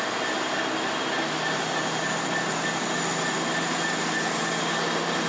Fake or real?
real